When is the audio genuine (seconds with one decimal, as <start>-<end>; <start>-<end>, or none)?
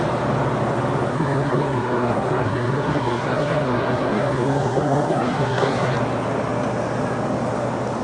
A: 0.0-1.1; 5.9-8.0